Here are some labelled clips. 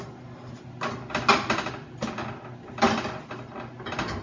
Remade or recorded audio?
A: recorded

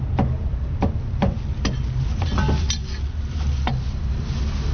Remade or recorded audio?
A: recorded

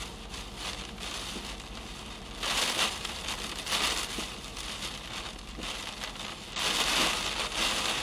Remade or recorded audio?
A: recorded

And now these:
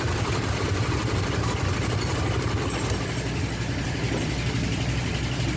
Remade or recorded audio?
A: recorded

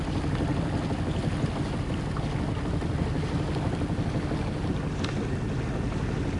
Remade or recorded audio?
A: recorded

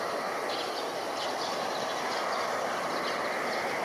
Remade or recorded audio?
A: recorded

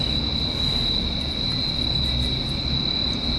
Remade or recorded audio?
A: recorded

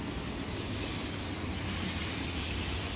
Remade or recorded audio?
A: recorded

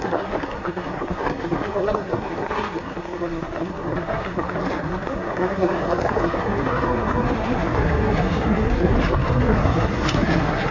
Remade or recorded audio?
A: remade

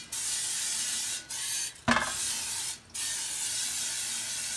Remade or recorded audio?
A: recorded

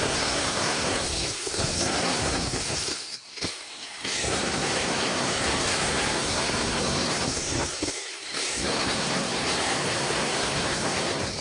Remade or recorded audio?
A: remade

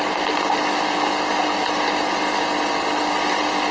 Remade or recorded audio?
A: recorded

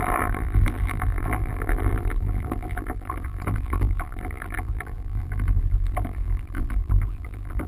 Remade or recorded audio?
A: remade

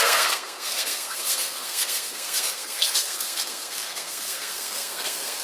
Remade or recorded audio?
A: remade